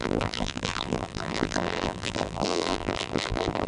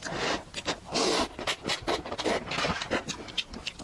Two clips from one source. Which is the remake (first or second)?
first